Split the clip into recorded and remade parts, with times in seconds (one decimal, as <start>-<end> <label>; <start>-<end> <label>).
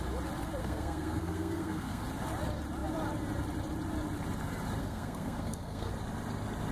0.0-0.6 recorded; 0.6-2.0 remade; 2.0-4.8 recorded; 4.8-5.9 remade; 5.9-6.7 recorded